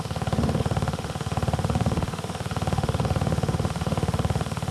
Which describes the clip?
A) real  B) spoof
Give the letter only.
B